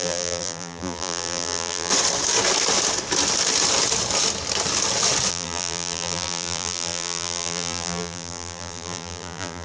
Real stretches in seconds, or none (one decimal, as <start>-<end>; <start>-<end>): 1.9-5.3